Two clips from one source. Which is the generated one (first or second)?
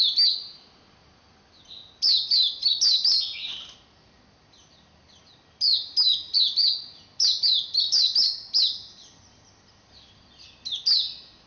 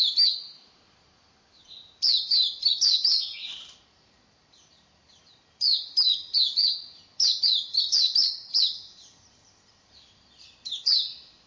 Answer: second